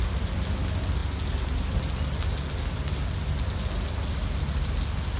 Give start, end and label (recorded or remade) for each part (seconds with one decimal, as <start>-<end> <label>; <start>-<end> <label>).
0.0-5.2 recorded